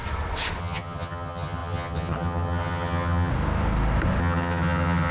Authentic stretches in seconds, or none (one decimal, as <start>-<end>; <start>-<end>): 0.0-0.6; 3.3-4.2